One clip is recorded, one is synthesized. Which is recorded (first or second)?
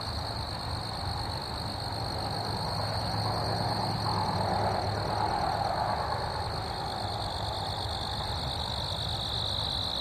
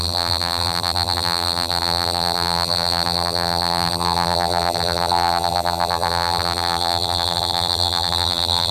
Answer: first